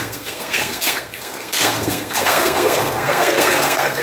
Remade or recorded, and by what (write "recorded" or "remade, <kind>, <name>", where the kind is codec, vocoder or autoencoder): remade, codec, SNAC